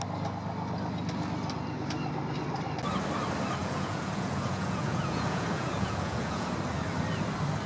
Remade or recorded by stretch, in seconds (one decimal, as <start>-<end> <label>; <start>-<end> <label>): 0.0-3.6 recorded; 3.6-6.5 remade; 6.5-7.7 recorded